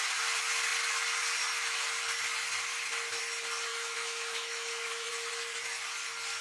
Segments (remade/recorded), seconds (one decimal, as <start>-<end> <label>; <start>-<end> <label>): 0.0-3.7 recorded; 3.7-5.1 remade; 5.1-6.4 recorded